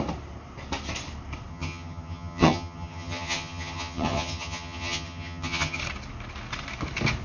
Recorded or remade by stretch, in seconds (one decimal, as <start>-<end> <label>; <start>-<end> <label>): 0.0-1.5 recorded; 1.5-5.8 remade; 5.8-7.2 recorded